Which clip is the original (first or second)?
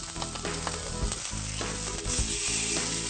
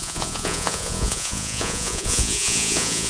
first